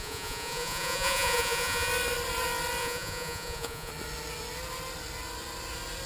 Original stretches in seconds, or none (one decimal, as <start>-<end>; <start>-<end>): 1.9-2.8; 3.9-6.1